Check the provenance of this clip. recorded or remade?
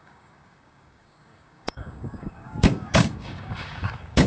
remade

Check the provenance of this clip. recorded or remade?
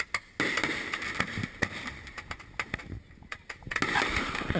recorded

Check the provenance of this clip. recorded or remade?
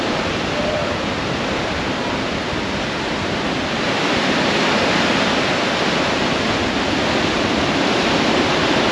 recorded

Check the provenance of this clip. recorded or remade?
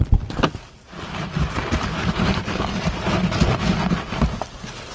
recorded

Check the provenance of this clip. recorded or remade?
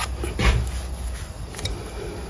recorded